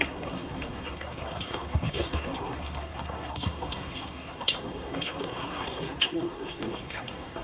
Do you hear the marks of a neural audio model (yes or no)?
yes